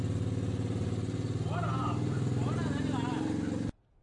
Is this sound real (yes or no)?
yes